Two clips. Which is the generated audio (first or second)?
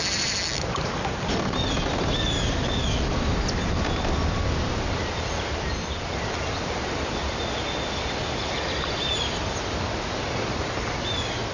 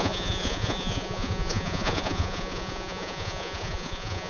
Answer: second